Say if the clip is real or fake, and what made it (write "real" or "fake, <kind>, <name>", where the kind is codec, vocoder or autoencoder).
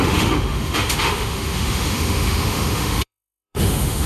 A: fake, autoencoder, DAC-VAE